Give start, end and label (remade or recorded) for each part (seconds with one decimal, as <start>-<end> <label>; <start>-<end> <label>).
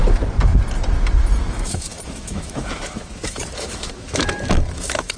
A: 0.0-1.5 recorded; 1.5-5.2 remade